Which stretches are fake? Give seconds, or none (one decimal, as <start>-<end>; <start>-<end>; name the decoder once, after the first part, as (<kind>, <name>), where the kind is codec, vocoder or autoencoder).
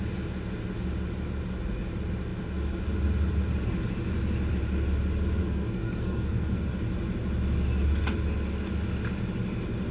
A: 5.4-6.7 (codec, SNAC)